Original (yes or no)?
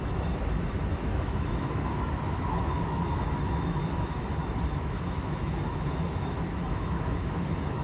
no